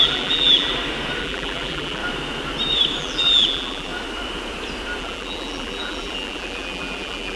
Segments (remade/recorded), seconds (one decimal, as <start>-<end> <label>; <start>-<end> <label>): 0.0-0.7 remade; 0.7-1.2 recorded; 1.2-2.0 remade; 2.0-3.0 recorded; 3.0-3.9 remade; 3.9-5.0 recorded; 5.0-7.4 remade